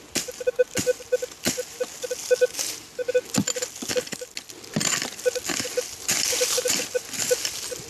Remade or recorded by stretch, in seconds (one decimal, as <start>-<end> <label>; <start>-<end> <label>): 0.0-7.9 recorded